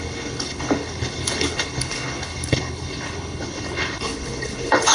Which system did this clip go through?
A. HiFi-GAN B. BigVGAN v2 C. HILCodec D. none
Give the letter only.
C